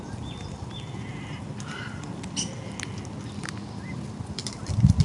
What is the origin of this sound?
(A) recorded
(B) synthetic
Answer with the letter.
A